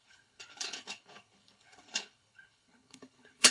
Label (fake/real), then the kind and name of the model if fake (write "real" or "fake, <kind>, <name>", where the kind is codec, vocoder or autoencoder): fake, codec, HILCodec